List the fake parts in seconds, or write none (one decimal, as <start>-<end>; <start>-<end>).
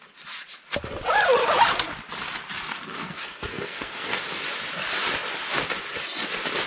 2.7-4.2